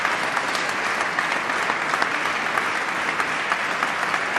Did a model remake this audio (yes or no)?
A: no